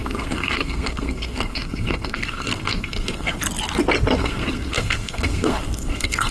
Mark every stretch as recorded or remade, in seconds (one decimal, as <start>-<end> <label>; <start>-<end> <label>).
0.0-3.4 remade; 3.4-4.2 recorded; 4.2-6.3 remade